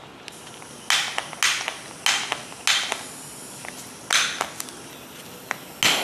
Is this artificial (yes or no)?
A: no